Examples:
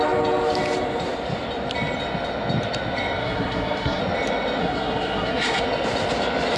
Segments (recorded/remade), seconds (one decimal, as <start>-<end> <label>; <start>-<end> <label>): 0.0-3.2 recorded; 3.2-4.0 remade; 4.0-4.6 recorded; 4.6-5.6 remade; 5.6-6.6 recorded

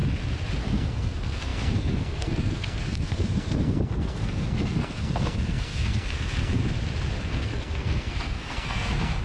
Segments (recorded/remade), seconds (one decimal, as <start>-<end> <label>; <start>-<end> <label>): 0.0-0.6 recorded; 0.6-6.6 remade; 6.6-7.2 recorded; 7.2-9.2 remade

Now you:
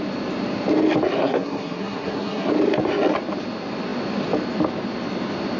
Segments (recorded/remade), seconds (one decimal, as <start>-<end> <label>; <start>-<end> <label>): 0.0-1.2 recorded; 1.2-2.5 remade; 2.5-5.6 recorded